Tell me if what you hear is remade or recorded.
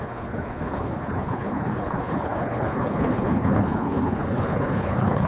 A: remade